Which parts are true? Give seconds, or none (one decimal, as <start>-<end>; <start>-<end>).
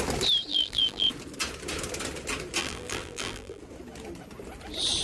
0.0-0.5; 1.1-2.6; 3.6-5.0